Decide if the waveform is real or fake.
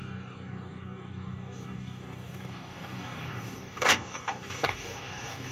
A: fake